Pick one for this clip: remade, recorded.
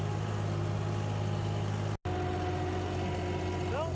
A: recorded